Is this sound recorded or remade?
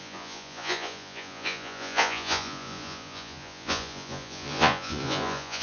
remade